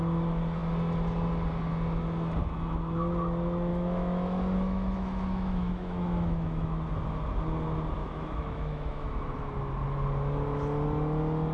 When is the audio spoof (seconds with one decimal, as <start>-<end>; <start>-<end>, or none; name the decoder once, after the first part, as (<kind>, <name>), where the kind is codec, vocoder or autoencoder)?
3.7-6.9 (autoencoder, DAC-VAE); 8.0-9.3